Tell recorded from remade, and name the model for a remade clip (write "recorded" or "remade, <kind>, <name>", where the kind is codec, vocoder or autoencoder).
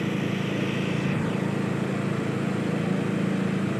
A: recorded